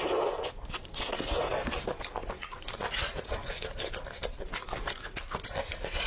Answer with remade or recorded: recorded